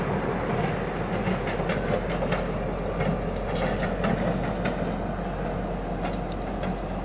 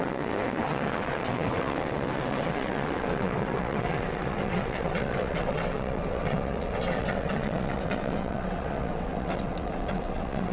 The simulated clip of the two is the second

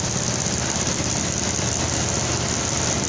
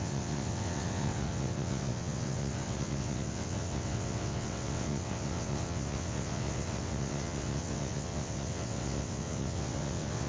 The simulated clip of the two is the second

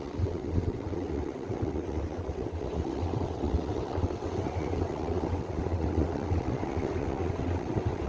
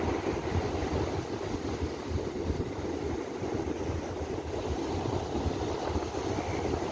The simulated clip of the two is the first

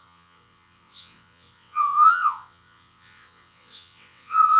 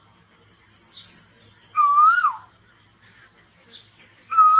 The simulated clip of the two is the first